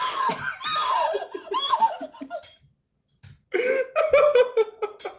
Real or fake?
real